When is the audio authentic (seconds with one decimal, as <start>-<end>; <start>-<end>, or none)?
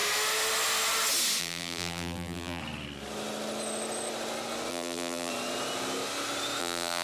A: 0.0-1.4; 2.6-4.7; 5.3-6.6